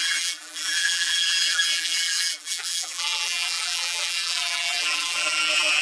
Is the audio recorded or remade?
remade